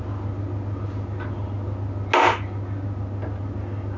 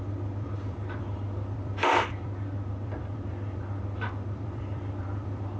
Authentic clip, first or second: first